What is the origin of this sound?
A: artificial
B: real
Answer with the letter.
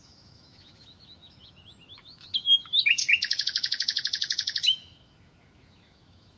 A